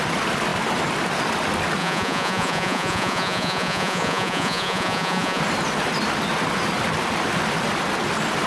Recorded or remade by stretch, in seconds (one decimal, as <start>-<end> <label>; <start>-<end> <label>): 0.0-1.8 recorded; 1.8-5.4 remade; 5.4-8.5 recorded